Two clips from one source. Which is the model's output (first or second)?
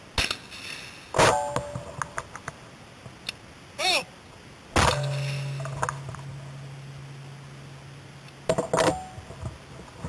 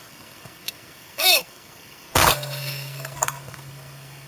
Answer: second